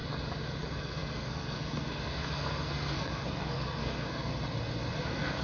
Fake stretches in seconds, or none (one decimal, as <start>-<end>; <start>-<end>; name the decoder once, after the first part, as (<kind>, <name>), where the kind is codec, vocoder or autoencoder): 0.6-4.3 (codec, SNAC); 5.0-5.4